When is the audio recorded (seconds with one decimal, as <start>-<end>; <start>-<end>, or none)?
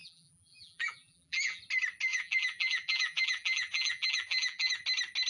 1.6-2.1; 4.7-5.3